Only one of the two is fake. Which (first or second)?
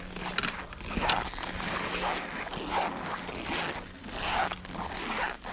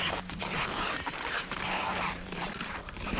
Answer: second